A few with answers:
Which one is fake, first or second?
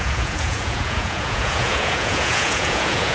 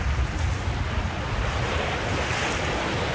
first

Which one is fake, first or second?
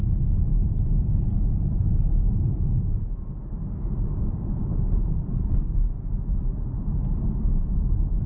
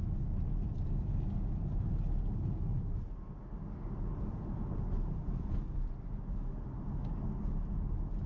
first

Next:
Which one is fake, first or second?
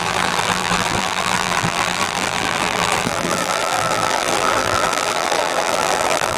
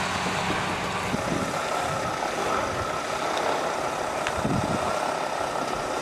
first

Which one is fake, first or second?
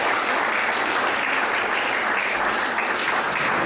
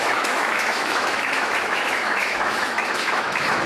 second